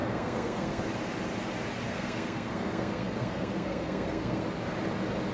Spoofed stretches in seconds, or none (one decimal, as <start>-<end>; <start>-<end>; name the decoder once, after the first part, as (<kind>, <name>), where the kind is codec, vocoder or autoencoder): 0.0-0.8 (codec, SNAC); 1.9-4.4